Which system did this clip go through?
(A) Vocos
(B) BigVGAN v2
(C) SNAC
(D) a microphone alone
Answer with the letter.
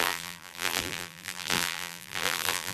B